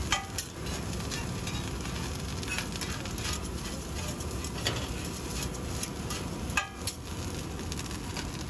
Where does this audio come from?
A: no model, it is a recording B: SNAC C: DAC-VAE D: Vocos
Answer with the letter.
A